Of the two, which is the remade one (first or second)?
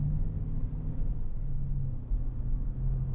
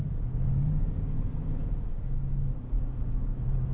second